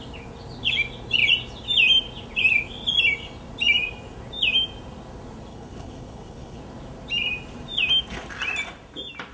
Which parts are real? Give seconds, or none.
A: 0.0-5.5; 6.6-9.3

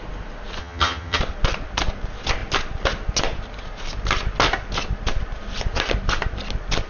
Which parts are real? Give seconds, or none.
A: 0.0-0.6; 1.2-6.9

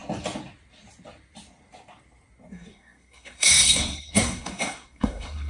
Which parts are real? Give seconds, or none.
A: 0.0-2.5

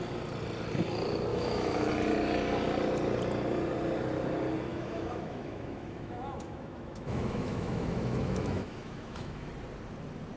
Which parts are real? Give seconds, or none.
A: 0.0-1.3; 1.9-4.7; 9.5-10.4

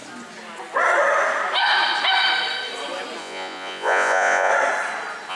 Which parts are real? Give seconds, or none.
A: 0.0-3.2; 4.5-5.3